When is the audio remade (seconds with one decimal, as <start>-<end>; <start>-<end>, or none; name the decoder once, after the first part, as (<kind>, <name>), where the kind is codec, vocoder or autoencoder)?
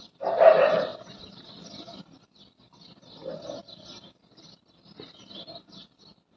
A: none